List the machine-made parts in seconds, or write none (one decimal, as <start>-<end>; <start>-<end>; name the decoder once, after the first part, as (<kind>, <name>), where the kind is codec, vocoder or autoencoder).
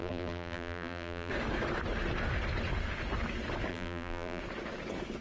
0.0-1.3 (vocoder, BigVGAN v2); 3.7-4.4